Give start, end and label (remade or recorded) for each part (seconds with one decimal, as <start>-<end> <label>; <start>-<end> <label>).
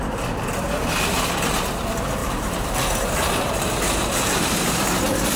0.0-2.2 recorded; 2.2-5.0 remade; 5.0-5.4 recorded